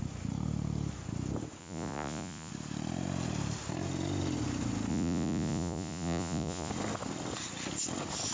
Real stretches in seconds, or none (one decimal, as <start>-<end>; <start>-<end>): 0.0-1.6; 2.5-4.9; 6.7-8.3